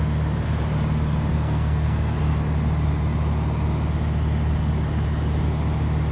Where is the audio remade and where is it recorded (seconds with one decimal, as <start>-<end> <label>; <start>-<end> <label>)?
0.0-1.3 recorded; 1.3-2.2 remade; 2.2-6.1 recorded